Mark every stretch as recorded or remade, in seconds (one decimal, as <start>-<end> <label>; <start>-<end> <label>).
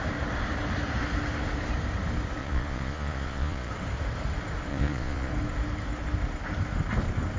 0.0-2.4 recorded; 2.4-3.7 remade; 3.7-4.7 recorded; 4.7-5.3 remade; 5.3-7.4 recorded